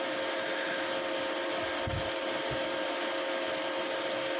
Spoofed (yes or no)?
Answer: no